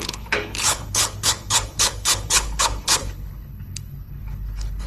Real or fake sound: fake